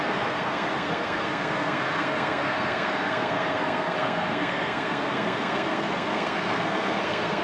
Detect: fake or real fake